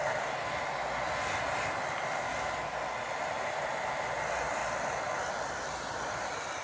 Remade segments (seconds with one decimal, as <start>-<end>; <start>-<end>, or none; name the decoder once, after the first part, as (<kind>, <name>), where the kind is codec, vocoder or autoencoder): none